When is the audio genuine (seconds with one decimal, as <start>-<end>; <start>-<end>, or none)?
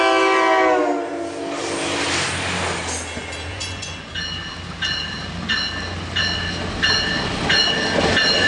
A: 0.0-3.5; 4.1-8.5